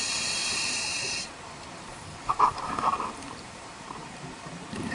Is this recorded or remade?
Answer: remade